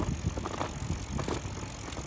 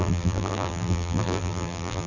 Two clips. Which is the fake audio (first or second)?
second